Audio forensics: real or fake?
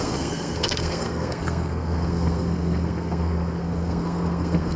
fake